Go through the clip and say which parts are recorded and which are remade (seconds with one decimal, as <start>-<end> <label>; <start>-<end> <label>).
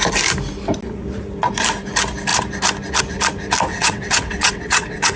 0.0-3.7 recorded; 3.7-5.2 remade